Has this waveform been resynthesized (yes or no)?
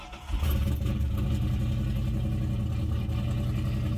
no